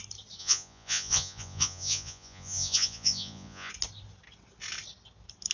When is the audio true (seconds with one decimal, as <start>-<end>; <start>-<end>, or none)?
0.0-0.4; 3.7-5.5